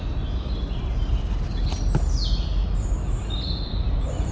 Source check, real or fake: real